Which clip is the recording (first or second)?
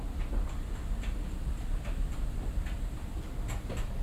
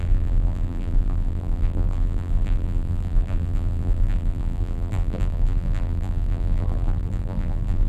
first